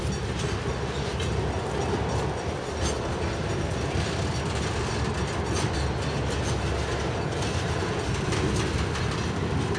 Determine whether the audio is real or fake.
real